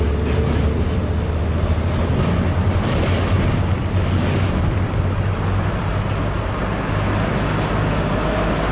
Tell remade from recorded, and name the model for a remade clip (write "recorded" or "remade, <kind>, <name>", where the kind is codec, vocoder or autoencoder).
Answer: recorded